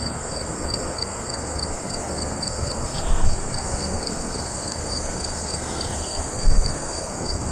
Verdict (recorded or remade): remade